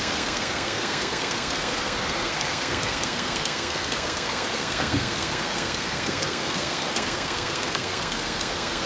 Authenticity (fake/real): fake